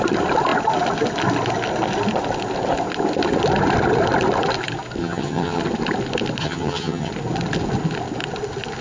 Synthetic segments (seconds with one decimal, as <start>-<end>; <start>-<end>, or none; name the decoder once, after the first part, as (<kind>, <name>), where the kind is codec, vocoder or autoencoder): 5.0-5.6 (vocoder, HiFi-GAN); 6.4-7.1